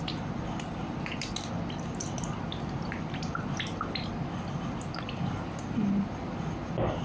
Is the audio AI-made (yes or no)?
no